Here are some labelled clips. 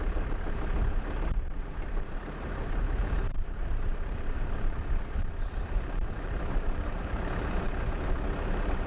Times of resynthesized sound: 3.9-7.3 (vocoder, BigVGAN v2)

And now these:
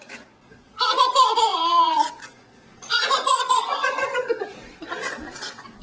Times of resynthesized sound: 0.0-5.8 (vocoder, Vocos)

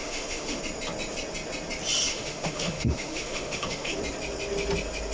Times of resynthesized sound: 0.0-0.6 (autoencoder, DAC-VAE); 2.1-4.0

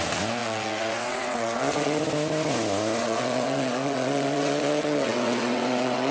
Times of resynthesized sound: 0.4-2.0 (vocoder, WaveNeXt); 3.0-6.1

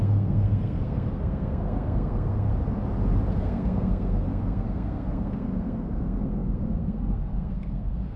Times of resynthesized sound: 0.0-2.5 (codec, SNAC); 3.3-8.2

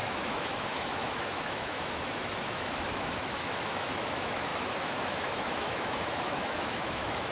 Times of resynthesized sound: 0.0-7.3 (autoencoder, DAC-VAE)

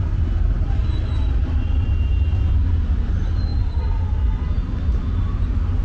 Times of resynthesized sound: none